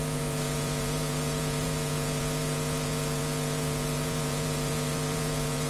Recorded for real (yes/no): no